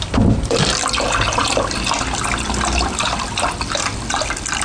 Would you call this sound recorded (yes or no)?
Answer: yes